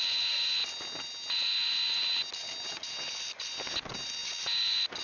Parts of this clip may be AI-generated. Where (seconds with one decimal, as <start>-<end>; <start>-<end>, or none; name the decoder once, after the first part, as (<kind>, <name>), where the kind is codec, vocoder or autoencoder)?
none